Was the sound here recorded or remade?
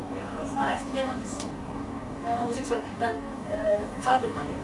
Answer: remade